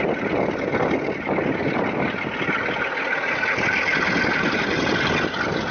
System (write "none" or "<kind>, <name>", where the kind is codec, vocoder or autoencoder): none